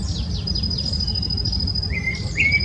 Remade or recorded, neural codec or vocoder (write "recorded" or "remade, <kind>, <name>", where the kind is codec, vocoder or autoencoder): recorded